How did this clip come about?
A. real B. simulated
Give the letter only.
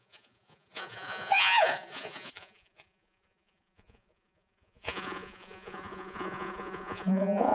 B